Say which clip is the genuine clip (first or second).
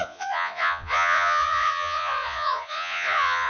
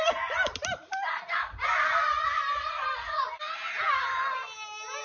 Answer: second